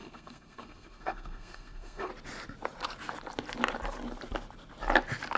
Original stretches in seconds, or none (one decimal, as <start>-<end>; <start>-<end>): 2.1-5.4